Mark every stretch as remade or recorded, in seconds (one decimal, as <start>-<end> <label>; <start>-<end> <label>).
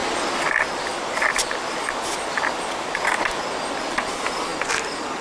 0.0-0.9 recorded; 0.9-4.0 remade; 4.0-5.2 recorded